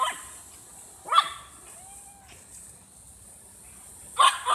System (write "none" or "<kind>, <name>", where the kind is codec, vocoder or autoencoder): none